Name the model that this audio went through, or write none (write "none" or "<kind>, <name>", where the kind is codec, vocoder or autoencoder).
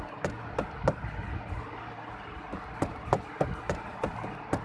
none